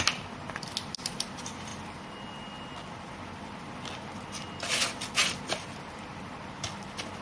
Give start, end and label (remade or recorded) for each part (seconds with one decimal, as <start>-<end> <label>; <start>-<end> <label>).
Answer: 0.0-5.2 recorded; 5.2-6.7 remade; 6.7-7.2 recorded